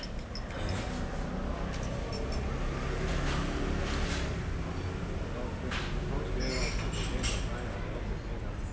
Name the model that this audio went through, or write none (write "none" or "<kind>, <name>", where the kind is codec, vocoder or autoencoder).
none